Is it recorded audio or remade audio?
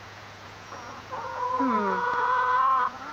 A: remade